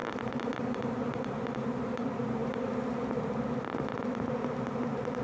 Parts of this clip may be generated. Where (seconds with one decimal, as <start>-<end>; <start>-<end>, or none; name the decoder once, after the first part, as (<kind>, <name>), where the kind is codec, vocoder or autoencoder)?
0.6-5.2 (vocoder, BigVGAN v2)